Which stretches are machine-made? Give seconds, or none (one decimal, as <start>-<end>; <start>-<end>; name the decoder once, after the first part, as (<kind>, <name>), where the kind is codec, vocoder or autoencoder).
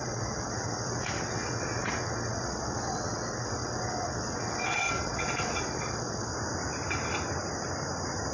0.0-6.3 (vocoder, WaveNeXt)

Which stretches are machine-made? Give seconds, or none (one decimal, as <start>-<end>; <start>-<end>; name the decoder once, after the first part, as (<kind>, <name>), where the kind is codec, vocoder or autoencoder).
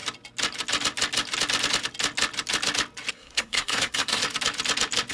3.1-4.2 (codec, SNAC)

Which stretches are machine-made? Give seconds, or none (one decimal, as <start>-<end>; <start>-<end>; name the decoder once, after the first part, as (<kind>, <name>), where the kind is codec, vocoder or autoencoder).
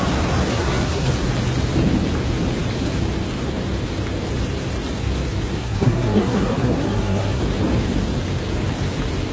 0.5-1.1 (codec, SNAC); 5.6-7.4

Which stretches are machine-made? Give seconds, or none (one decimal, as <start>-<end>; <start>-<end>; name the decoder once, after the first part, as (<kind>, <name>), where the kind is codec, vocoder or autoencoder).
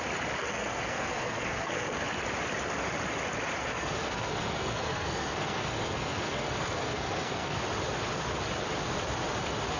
0.4-2.0 (codec, SNAC); 3.6-7.6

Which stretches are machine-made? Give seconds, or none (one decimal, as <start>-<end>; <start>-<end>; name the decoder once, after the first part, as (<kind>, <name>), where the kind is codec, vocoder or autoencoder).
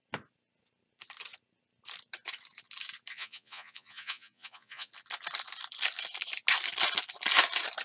3.1-4.9 (vocoder, Vocos)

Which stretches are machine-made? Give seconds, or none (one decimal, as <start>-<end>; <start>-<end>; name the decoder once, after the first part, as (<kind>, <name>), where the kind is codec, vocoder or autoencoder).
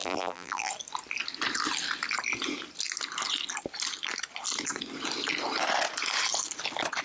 0.0-0.7 (vocoder, BigVGAN v2)